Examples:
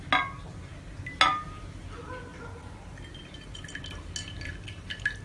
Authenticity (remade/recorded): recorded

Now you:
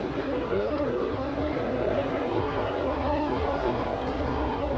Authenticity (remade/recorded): remade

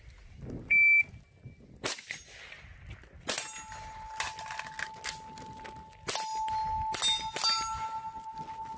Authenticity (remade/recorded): recorded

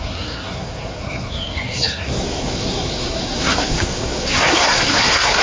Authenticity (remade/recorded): remade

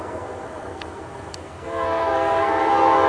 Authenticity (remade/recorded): remade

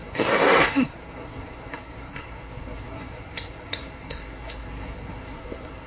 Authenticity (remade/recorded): remade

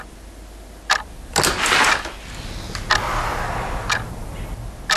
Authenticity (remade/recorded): recorded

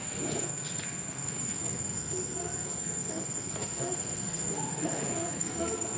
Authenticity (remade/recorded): remade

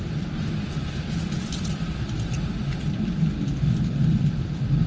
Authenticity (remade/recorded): recorded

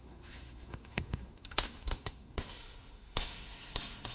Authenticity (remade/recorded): remade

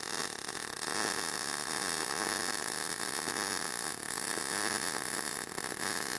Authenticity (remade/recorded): recorded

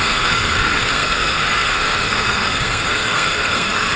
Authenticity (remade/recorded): remade